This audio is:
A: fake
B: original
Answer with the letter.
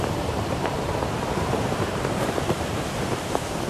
A